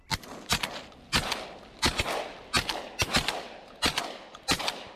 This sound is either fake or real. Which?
real